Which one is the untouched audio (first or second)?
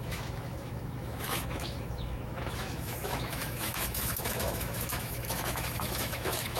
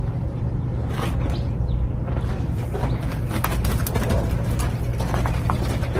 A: second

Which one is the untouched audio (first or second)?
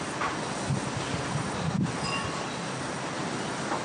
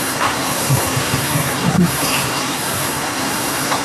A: first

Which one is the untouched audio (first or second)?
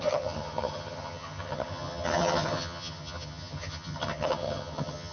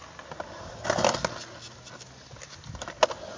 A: second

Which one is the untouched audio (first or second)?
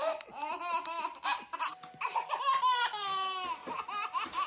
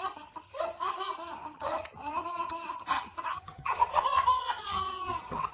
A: first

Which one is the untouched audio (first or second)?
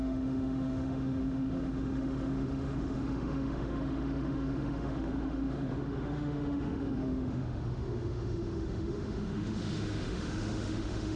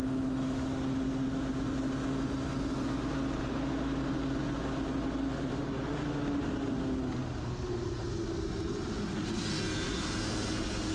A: second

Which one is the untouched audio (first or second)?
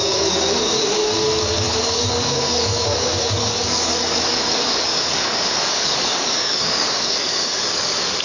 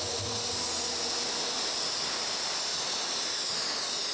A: second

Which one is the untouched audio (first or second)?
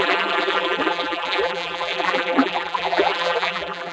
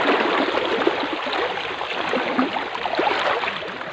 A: second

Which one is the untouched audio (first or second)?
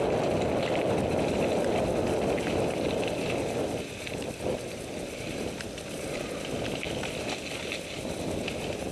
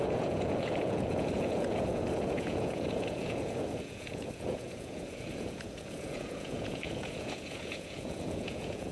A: first